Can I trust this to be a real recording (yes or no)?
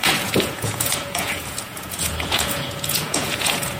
no